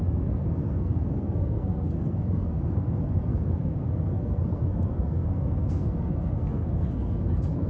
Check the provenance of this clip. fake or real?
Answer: fake